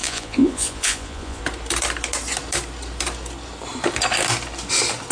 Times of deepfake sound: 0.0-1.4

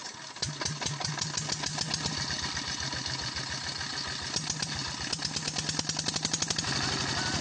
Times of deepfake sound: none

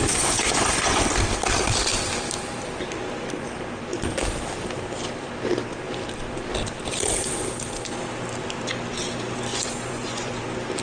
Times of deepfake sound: 0.0-1.1; 9.5-10.4

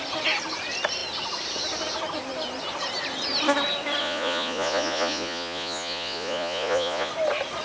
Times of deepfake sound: 4.0-7.1